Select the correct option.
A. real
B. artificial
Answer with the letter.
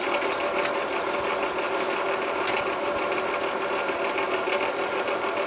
A